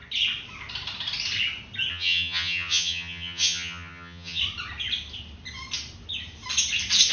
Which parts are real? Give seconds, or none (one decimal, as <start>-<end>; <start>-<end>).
0.0-1.9; 4.4-7.1